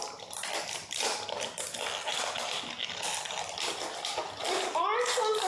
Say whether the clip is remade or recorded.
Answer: recorded